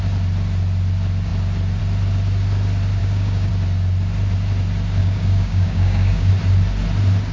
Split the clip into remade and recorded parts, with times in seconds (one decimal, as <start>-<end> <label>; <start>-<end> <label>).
0.0-3.0 recorded; 3.0-3.5 remade; 3.5-5.0 recorded; 5.0-6.3 remade; 6.3-7.3 recorded